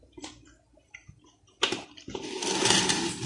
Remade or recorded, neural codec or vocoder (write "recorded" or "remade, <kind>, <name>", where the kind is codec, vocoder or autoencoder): recorded